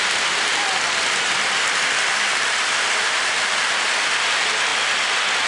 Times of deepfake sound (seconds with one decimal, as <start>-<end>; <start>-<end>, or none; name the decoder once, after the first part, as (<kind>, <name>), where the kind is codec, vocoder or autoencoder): none